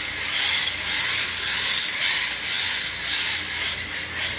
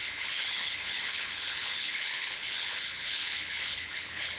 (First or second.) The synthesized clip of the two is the second